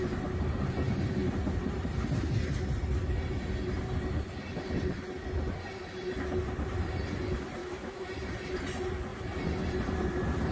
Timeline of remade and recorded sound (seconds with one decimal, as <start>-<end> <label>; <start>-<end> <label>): 0.0-7.6 recorded; 7.6-8.1 remade; 8.1-10.5 recorded